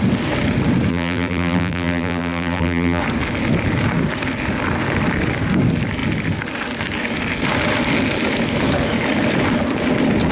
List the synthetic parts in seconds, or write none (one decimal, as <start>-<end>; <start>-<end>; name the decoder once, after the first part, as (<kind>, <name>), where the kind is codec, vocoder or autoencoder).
0.9-3.0 (vocoder, BigVGAN v2)